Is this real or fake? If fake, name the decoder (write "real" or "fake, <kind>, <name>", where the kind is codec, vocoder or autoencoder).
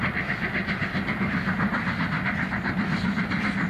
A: real